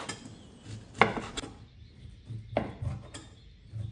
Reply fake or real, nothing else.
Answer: real